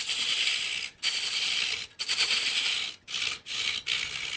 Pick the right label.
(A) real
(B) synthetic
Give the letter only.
A